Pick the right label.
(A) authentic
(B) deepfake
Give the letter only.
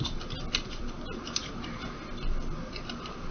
A